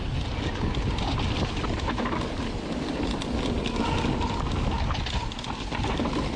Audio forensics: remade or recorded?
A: recorded